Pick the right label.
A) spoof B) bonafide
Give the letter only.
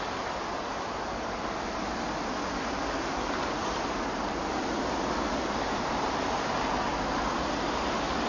B